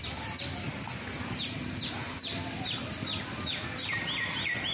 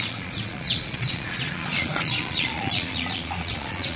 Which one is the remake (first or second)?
second